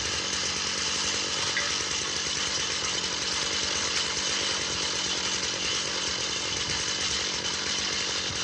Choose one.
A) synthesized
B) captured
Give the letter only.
B